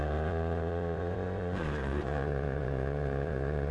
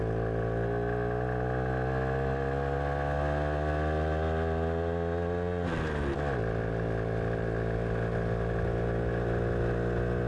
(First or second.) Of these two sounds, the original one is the second